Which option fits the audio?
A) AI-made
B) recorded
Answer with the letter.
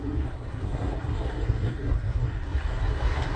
A